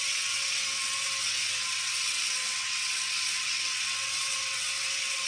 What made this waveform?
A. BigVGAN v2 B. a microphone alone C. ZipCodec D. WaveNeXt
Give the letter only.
D